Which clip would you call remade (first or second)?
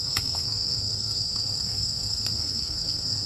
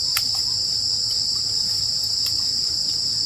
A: first